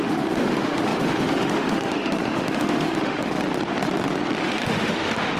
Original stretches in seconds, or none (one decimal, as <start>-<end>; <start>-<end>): 3.4-4.4